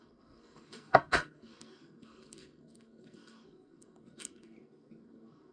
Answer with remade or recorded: remade